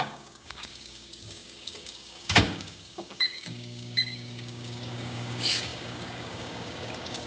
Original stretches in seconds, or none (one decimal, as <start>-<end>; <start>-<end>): none